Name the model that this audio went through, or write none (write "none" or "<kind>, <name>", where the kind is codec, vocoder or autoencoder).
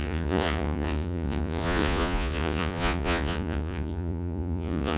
vocoder, Vocos